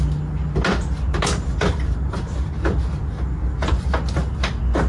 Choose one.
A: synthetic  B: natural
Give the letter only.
B